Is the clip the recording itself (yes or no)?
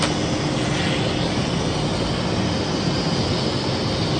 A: yes